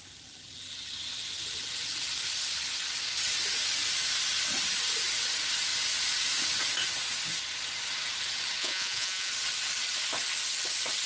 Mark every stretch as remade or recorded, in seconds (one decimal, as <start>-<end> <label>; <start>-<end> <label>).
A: 0.0-8.6 recorded; 8.6-9.3 remade; 9.3-11.1 recorded